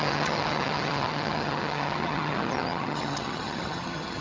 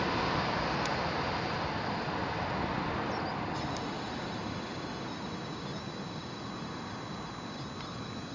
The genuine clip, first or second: second